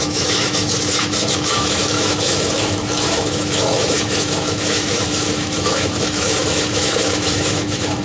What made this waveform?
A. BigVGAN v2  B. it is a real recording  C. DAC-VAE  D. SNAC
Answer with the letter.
C